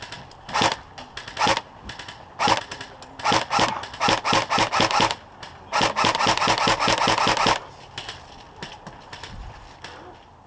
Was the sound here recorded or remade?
recorded